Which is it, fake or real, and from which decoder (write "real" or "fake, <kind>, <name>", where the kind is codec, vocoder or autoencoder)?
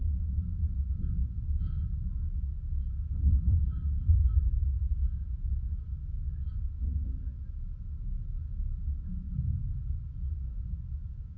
real